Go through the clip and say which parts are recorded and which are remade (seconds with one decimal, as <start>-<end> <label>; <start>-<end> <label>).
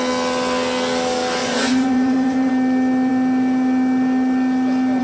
0.0-1.4 recorded; 1.4-2.5 remade; 2.5-5.0 recorded